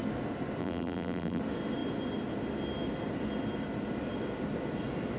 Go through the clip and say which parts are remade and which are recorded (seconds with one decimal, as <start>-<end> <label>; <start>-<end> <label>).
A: 0.0-0.6 recorded; 0.6-1.4 remade; 1.4-5.2 recorded